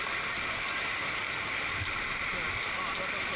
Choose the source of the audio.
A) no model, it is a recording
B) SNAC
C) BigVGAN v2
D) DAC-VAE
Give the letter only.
A